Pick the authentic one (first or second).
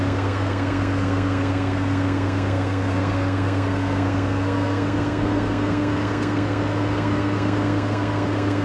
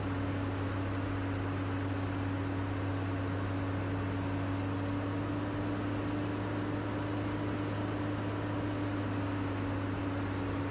second